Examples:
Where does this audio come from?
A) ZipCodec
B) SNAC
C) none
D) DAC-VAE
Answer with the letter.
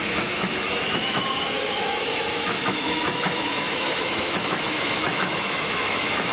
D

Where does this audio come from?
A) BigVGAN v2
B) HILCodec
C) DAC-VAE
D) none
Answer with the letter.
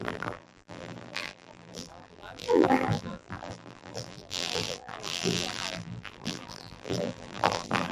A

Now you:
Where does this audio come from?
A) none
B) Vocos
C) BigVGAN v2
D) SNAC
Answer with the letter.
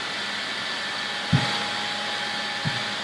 A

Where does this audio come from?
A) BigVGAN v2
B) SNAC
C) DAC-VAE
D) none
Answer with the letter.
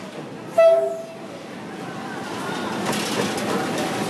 D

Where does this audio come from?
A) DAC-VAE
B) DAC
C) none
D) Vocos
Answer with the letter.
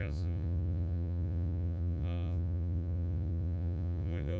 D